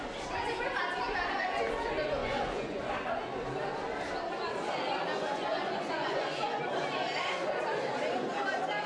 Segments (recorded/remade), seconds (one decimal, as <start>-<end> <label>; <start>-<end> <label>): 0.0-2.2 recorded; 2.2-2.8 remade; 2.8-5.1 recorded; 5.1-6.6 remade; 6.6-8.9 recorded